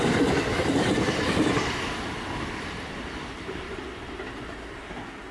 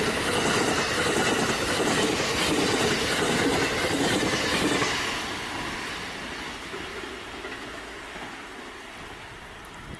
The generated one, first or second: first